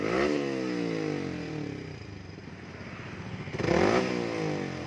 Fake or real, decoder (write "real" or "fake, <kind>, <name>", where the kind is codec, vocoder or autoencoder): real